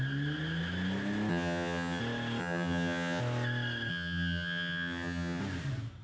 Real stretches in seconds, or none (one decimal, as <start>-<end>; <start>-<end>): 0.0-1.3; 2.0-2.4; 3.2-3.9; 5.4-6.0